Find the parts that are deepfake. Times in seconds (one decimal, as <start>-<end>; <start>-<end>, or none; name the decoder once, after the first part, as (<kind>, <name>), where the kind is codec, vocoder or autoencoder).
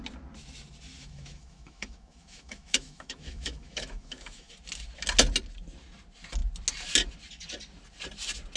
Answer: 0.9-4.5 (autoencoder, DAC-VAE)